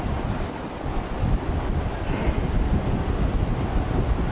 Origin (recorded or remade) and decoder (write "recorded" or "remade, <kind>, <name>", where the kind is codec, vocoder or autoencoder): recorded